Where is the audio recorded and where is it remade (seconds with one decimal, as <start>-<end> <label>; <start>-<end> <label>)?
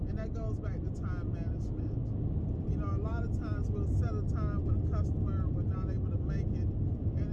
0.0-7.3 recorded